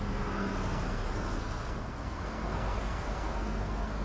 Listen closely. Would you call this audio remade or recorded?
remade